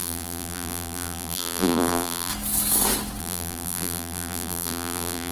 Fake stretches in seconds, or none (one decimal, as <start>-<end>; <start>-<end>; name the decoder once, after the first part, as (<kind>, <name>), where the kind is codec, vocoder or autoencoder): 0.0-2.3 (vocoder, BigVGAN v2); 3.2-5.3